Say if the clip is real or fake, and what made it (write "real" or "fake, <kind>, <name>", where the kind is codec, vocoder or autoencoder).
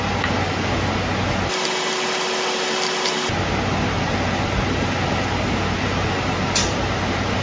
real